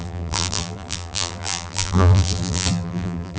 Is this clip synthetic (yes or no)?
yes